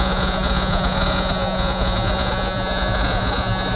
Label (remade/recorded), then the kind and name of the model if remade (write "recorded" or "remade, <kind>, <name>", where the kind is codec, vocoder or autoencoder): remade, vocoder, Vocos